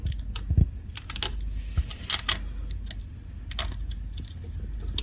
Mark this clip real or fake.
real